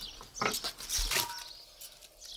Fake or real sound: real